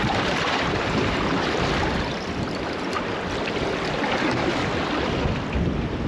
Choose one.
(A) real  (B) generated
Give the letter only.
A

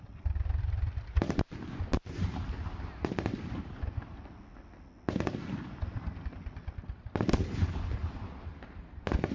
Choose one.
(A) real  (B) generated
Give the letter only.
A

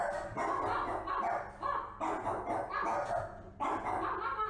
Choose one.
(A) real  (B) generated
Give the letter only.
A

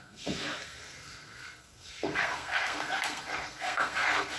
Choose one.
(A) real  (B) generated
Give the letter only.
B